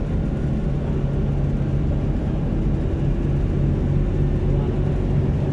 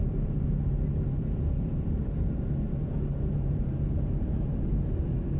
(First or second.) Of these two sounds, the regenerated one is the second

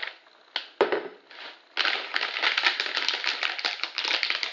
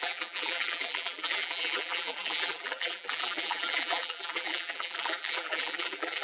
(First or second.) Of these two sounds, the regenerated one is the second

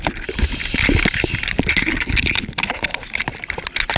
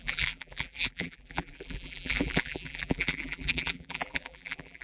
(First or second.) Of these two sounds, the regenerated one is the second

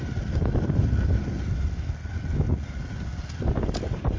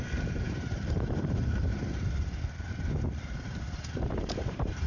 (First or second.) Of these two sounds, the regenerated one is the second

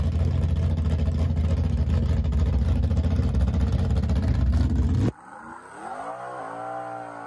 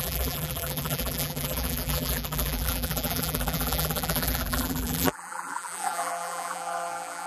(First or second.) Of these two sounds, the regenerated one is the second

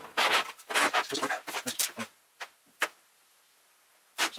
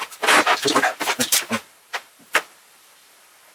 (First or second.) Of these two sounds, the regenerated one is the second